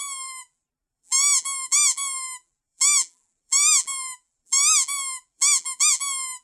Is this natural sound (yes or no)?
no